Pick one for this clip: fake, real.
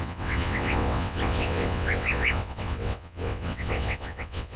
fake